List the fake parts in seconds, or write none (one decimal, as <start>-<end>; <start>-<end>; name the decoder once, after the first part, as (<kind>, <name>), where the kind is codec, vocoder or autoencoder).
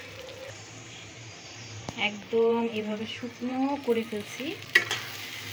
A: 0.4-3.0 (vocoder, BigVGAN v2); 3.5-4.3